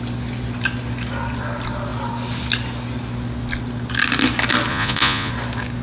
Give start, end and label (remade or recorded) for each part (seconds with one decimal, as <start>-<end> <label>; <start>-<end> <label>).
0.0-4.7 recorded; 4.7-5.3 remade; 5.3-5.8 recorded